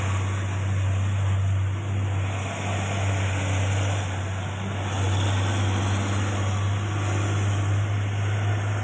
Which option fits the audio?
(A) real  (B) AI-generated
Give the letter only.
A